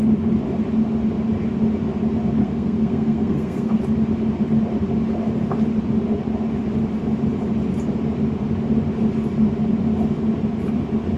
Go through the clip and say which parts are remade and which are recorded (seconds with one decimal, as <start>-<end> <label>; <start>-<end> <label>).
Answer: 0.0-2.4 recorded; 2.4-3.7 remade; 3.7-11.2 recorded

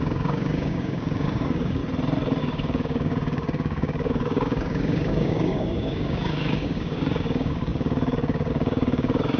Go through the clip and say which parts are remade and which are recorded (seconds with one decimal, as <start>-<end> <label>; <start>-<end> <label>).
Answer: 0.0-1.8 remade; 1.8-2.4 recorded; 2.4-9.4 remade

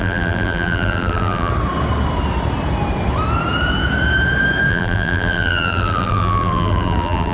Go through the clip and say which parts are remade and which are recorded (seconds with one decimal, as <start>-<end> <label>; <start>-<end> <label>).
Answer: 0.0-1.5 remade; 1.5-4.7 recorded; 4.7-7.3 remade

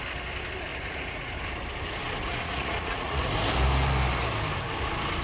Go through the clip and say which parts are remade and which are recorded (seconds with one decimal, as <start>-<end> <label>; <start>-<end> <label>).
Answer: 0.0-0.7 recorded; 0.7-1.3 remade; 1.3-2.3 recorded; 2.3-3.2 remade; 3.2-5.2 recorded

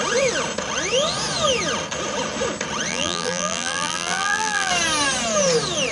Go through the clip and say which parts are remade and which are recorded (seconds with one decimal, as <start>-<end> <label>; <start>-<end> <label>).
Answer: 0.0-2.9 recorded; 2.9-4.7 remade; 4.7-5.9 recorded